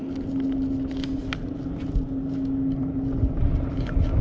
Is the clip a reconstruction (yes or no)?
no